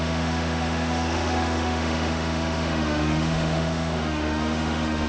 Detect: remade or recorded remade